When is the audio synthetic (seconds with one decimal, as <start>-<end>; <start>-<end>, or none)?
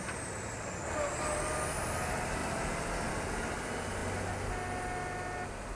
none